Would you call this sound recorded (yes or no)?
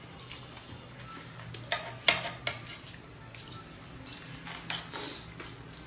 yes